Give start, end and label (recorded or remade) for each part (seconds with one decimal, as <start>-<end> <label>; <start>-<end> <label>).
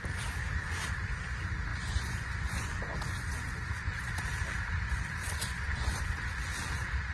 0.0-1.7 recorded; 1.7-4.2 remade; 4.2-5.2 recorded; 5.2-6.0 remade; 6.0-7.1 recorded